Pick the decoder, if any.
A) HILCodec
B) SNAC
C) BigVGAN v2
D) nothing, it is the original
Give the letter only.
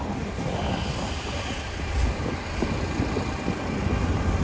D